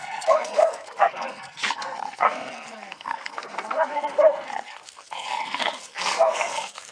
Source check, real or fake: fake